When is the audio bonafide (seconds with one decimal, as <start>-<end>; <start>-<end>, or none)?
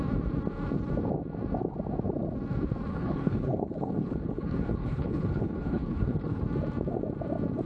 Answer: 0.0-2.9; 6.4-7.7